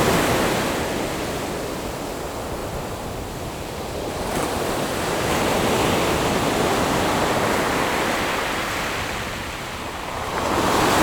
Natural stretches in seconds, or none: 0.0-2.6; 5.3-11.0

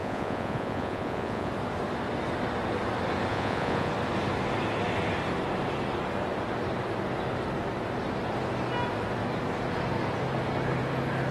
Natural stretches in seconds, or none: 1.5-3.3; 3.9-11.3

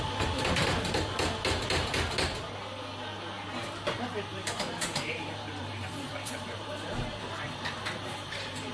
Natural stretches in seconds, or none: 0.0-4.3

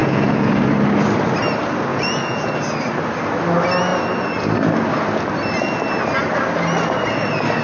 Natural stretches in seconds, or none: 0.6-1.9; 2.5-7.6

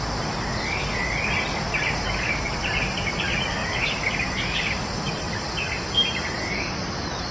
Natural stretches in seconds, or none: 0.0-7.3